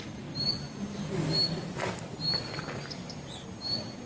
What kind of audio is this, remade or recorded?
recorded